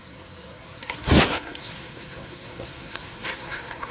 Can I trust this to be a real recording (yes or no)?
no